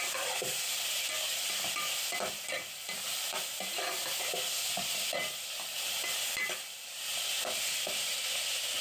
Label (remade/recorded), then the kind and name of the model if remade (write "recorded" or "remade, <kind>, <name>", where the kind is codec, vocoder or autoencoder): recorded